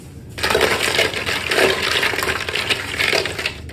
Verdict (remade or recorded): recorded